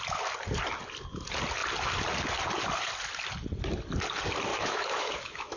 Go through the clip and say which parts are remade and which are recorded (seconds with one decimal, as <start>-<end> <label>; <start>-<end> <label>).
0.0-4.5 recorded; 4.5-5.6 remade